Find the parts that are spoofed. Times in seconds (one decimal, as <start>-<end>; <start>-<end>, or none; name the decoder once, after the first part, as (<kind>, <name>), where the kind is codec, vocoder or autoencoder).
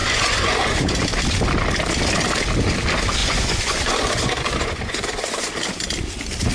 0.0-1.0 (vocoder, Vocos); 3.2-5.5